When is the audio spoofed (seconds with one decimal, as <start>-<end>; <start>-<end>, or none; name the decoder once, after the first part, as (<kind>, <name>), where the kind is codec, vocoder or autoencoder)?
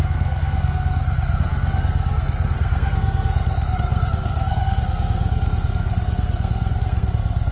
0.0-7.5 (codec, SNAC)